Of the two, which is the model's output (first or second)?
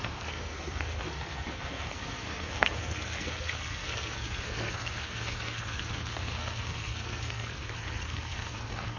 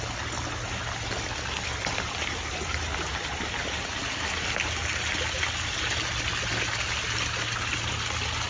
first